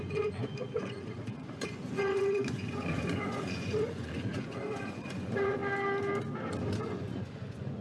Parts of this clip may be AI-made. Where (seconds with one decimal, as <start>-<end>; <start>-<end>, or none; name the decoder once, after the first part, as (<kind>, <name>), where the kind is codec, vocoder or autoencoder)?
0.0-5.6 (vocoder, Vocos); 6.8-7.8